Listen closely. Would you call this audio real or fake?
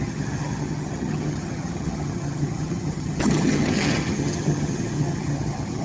fake